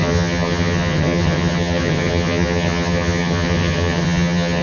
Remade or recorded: remade